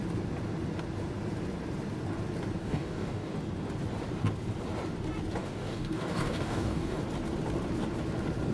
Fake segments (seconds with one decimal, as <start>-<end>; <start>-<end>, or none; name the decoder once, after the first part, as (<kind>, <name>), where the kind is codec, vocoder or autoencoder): 2.6-3.3 (codec, DAC); 5.4-7.0